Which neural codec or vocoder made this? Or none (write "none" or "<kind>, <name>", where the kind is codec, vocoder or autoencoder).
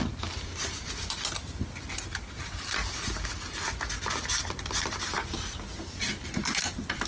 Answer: none